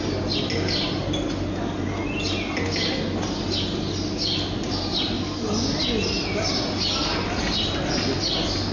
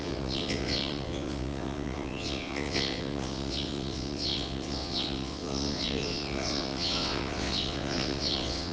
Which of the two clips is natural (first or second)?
first